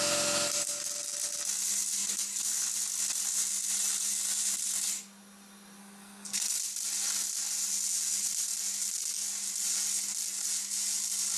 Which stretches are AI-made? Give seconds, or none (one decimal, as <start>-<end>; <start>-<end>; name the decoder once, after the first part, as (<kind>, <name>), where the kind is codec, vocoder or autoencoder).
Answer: 5.8-6.6 (codec, SNAC)